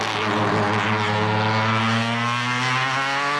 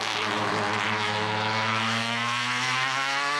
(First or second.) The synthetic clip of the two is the second